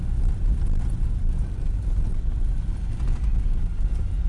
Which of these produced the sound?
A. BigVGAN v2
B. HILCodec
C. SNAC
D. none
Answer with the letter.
D